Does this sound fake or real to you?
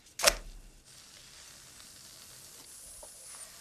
real